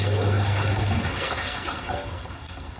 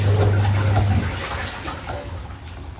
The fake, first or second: first